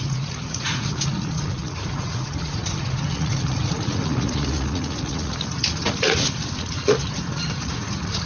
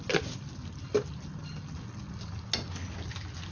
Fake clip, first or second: first